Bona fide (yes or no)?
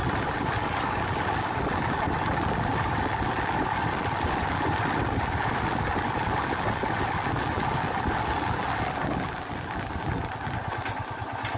yes